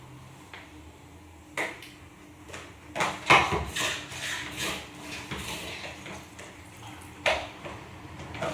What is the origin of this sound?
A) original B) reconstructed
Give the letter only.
A